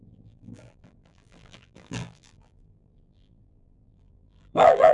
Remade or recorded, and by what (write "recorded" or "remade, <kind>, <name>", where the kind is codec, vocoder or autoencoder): remade, vocoder, BigVGAN v2